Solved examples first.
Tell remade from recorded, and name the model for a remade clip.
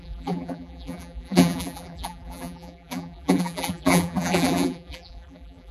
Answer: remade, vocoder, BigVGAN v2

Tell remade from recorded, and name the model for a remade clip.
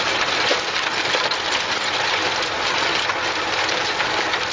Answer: recorded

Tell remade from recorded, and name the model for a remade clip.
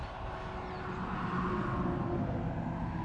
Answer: recorded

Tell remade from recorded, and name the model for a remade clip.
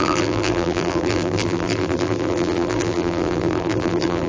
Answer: remade, vocoder, BigVGAN v2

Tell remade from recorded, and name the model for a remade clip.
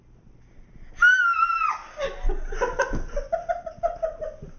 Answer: recorded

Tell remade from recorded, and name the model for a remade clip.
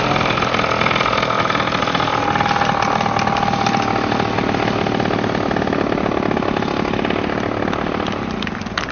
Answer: recorded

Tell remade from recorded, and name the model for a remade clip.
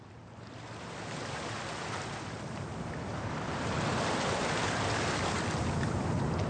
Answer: remade, vocoder, BigVGAN v2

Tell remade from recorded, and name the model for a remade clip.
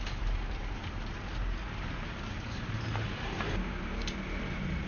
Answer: remade, vocoder, BigVGAN v2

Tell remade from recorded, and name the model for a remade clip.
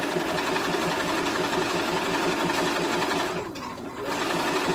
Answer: recorded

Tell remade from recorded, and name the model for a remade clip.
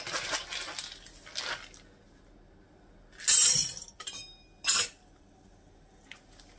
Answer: recorded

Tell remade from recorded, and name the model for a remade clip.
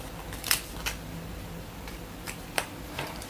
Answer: remade, vocoder, BigVGAN v2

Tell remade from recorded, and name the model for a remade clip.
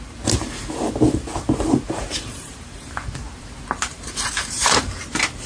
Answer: remade, vocoder, BigVGAN v2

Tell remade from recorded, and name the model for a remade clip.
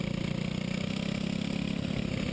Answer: recorded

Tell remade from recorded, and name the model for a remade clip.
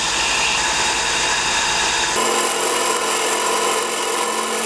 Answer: recorded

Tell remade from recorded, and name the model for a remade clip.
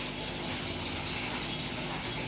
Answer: recorded